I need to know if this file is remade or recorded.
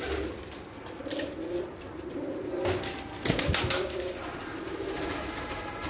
recorded